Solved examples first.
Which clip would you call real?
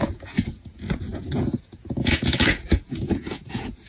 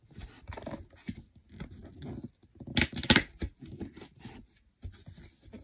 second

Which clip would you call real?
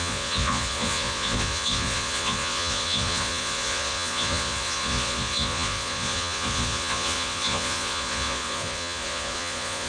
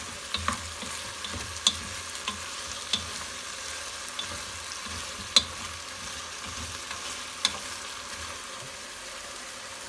second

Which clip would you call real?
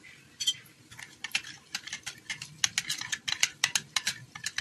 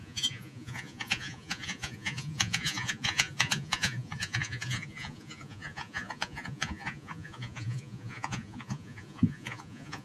first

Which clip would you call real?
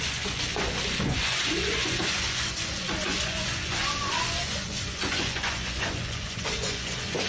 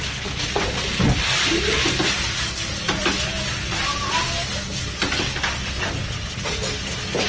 second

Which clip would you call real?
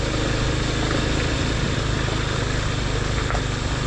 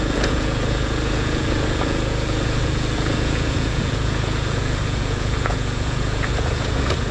first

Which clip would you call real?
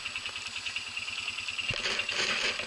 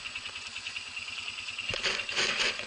first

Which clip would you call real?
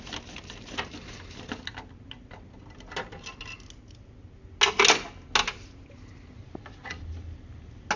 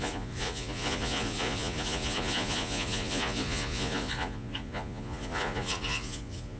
first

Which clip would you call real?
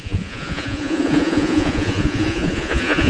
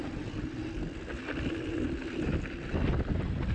second